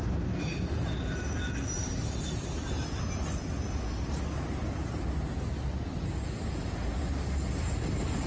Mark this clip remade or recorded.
recorded